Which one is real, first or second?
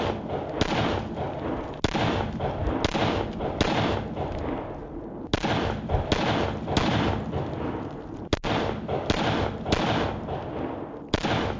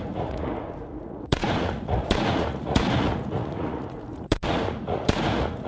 first